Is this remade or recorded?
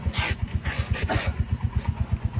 remade